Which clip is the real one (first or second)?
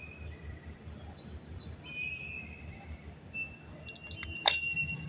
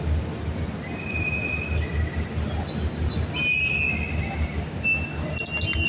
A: second